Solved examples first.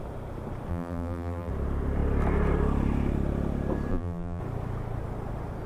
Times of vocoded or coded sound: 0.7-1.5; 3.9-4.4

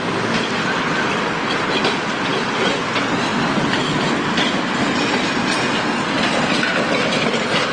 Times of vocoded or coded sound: 1.1-1.8

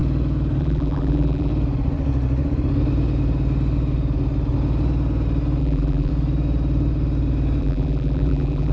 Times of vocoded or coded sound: 0.6-1.5; 5.6-6.1; 7.6-8.7

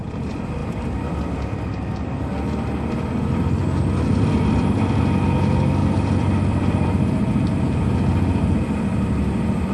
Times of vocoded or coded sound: 0.6-2.2; 3.6-4.4; 5.8-9.7

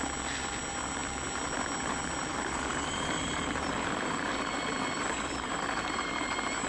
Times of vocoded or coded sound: 2.2-6.2

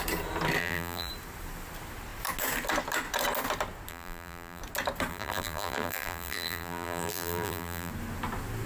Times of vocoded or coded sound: 0.6-1.1; 3.9-4.6; 5.1-7.9